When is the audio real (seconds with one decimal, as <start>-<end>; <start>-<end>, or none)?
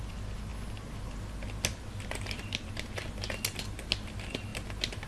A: 0.0-5.1